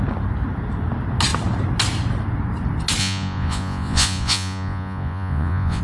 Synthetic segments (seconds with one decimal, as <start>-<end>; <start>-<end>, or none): 3.0-5.8